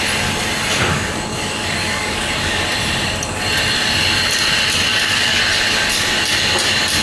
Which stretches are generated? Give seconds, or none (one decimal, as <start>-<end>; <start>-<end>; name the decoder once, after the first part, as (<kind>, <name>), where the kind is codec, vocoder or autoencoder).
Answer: 0.9-2.6 (codec, DAC); 4.9-5.4